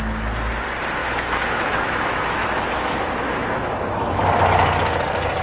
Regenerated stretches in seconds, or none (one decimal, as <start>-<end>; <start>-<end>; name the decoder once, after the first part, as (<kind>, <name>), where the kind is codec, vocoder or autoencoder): 1.0-4.2 (autoencoder, DAC-VAE)